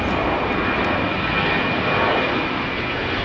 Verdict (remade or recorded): recorded